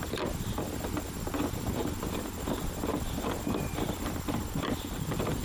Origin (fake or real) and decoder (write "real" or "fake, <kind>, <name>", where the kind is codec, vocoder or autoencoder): real